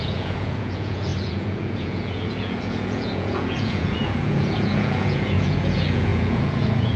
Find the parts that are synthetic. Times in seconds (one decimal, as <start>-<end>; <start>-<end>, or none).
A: 0.0-7.0